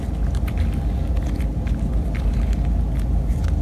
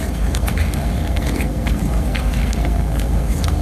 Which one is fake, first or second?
second